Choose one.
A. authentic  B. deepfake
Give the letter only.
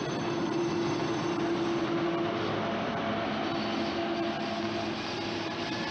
A